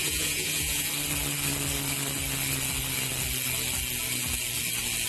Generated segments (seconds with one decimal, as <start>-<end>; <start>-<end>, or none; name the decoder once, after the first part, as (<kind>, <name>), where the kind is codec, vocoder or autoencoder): 0.0-0.9 (vocoder, Vocos)

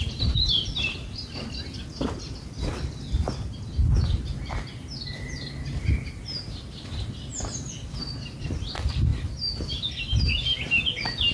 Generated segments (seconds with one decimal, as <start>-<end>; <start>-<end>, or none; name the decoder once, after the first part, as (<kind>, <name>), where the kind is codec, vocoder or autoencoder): none